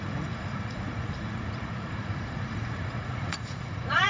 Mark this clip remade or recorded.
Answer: remade